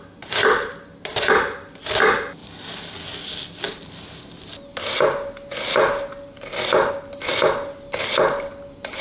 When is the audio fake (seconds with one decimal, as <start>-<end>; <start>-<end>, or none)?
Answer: none